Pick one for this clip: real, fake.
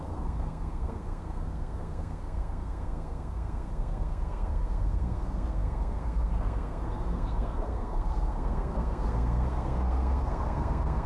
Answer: fake